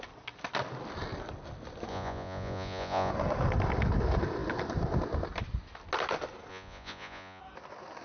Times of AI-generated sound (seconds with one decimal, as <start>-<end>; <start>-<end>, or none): 1.9-3.1; 6.5-7.4